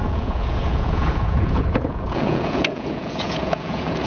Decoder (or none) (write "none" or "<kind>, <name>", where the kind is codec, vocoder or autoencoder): vocoder, Vocos